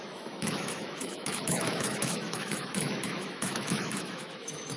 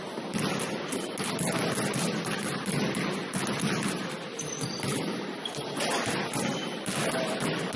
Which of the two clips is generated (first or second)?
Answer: first